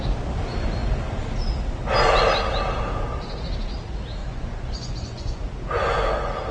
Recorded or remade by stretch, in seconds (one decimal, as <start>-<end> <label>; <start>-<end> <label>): 0.0-4.2 recorded; 4.2-5.4 remade; 5.4-6.5 recorded

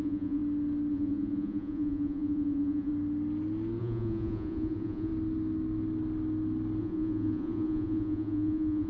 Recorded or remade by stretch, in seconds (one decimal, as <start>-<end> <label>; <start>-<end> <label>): 0.0-0.4 remade; 0.4-0.9 recorded; 0.9-2.9 remade; 2.9-3.8 recorded; 3.8-5.1 remade; 5.1-6.8 recorded; 6.8-8.9 remade

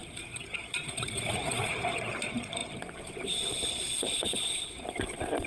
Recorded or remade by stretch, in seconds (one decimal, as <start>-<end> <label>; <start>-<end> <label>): 0.0-5.5 remade

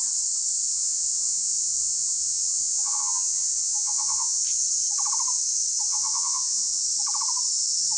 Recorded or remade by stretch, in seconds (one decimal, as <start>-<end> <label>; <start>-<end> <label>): 0.0-0.7 recorded; 0.7-4.4 remade; 4.4-5.9 recorded; 5.9-6.8 remade; 6.8-8.0 recorded

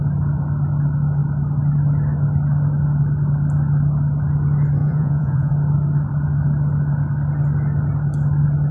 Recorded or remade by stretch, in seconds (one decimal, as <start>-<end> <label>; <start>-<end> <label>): 0.0-4.8 recorded; 4.8-5.5 remade; 5.5-8.7 recorded

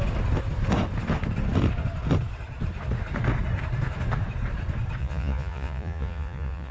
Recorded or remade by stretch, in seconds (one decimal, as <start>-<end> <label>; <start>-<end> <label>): 0.0-5.0 recorded; 5.0-6.7 remade

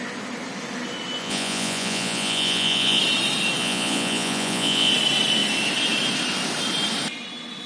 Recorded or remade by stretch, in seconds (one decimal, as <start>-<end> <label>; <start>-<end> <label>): 0.0-1.2 recorded; 1.2-3.0 remade; 3.0-3.6 recorded; 3.6-4.9 remade; 4.9-7.7 recorded